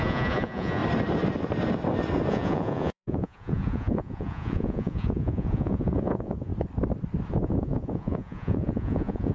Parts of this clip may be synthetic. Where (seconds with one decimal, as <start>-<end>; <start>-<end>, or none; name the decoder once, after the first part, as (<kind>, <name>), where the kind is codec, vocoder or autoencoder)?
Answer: 0.0-0.8 (vocoder, Vocos); 2.3-6.5; 7.3-9.3